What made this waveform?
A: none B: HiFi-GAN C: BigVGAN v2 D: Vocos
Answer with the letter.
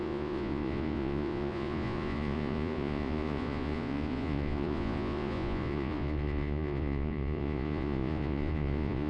D